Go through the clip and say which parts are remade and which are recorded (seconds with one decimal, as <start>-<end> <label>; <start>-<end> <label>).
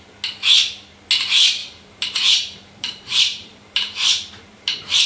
0.0-1.6 recorded; 1.6-5.1 remade